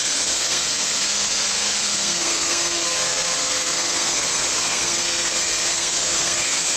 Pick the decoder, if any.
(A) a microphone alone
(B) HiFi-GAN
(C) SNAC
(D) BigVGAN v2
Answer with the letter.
C